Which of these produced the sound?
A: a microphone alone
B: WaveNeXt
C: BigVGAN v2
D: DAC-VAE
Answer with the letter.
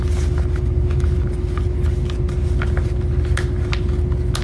A